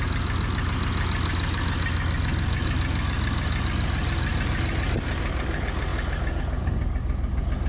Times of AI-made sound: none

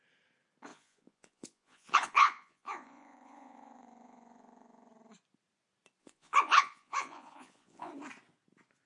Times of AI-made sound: 0.7-4.9 (vocoder, Vocos); 6.0-7.9

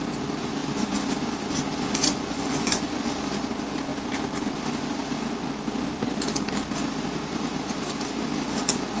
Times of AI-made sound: 2.0-3.1 (vocoder, Vocos)

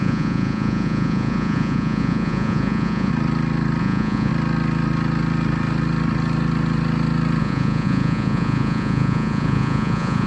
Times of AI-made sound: 0.0-3.1 (vocoder, Vocos); 3.8-4.3; 7.4-10.3

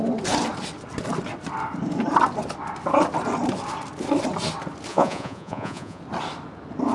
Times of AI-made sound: 4.9-6.0 (vocoder, Vocos)

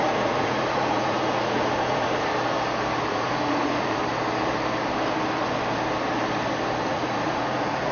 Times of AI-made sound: 0.0-2.3 (vocoder, Vocos); 3.1-4.0; 6.9-7.9

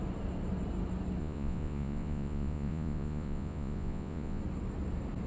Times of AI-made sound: 1.2-4.4 (vocoder, Vocos)

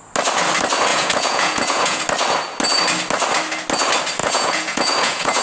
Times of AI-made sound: 0.9-2.0 (vocoder, Vocos); 4.2-5.4